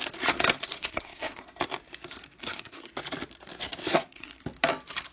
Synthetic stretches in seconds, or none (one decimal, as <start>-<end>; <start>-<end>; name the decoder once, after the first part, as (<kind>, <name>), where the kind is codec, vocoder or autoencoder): 0.8-1.4 (codec, SNAC); 2.4-2.9; 3.8-4.4